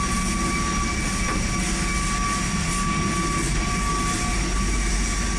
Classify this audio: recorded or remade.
recorded